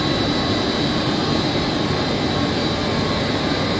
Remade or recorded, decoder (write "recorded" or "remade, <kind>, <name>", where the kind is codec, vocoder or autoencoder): remade, vocoder, BigVGAN v2